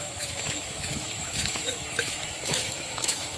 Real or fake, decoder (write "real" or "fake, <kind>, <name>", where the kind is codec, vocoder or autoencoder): fake, autoencoder, DAC-VAE